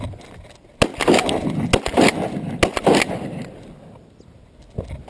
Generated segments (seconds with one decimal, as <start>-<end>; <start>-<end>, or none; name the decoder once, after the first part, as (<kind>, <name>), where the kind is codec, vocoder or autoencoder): none